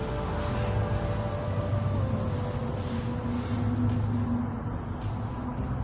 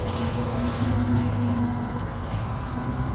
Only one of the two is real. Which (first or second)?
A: first